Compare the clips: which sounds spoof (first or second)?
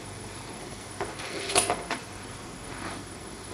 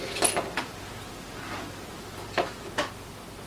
first